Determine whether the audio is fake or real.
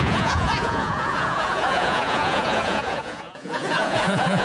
fake